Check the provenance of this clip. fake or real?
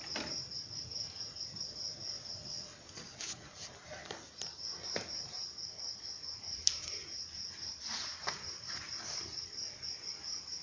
real